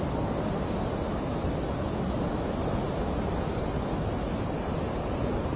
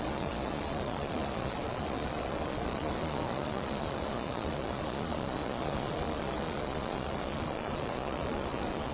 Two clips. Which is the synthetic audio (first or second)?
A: second